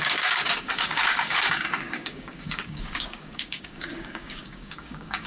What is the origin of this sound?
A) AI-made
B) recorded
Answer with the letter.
A